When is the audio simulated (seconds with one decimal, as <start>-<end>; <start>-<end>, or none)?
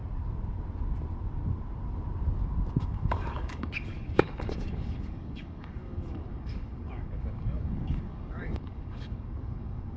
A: 2.8-10.0